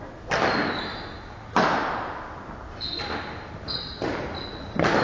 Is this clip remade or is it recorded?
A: recorded